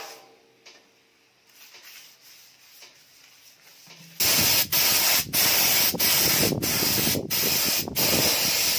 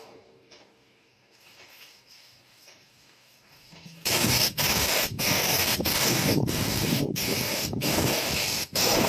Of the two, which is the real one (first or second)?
first